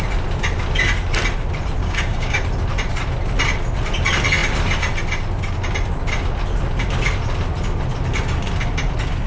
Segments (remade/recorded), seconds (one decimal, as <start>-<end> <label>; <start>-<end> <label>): 0.0-1.8 recorded; 1.8-2.4 remade; 2.4-9.3 recorded